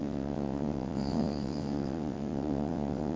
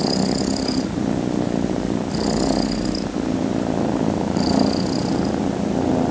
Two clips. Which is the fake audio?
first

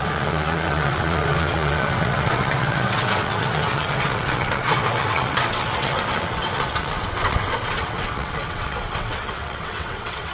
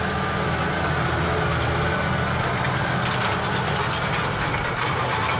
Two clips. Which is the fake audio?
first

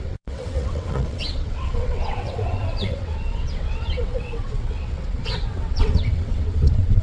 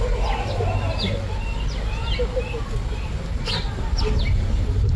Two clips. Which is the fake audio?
first